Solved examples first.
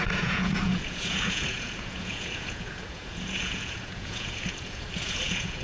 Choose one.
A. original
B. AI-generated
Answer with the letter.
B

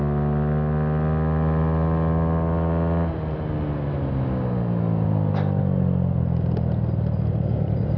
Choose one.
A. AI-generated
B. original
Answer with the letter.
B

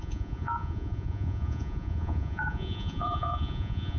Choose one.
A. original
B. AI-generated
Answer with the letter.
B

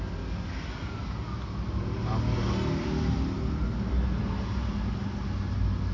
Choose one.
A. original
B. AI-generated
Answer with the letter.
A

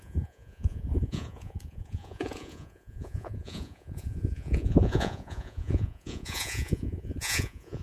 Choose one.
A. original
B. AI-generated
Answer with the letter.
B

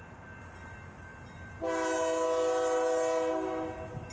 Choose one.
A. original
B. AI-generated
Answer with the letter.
A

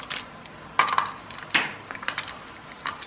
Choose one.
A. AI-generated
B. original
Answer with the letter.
B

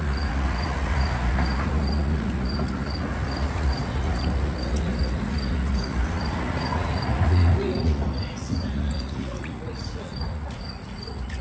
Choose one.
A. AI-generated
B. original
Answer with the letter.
A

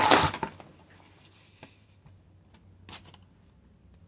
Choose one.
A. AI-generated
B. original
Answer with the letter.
B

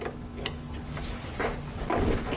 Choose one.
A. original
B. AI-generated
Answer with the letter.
A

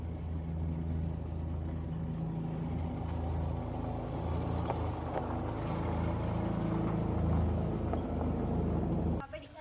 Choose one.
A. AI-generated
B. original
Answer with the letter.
B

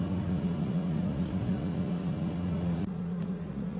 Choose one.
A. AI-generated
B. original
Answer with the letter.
A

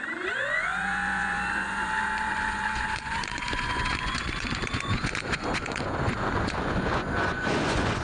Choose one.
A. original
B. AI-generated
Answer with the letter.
B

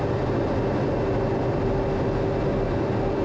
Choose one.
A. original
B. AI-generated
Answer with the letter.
A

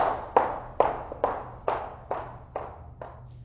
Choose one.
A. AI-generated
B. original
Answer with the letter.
B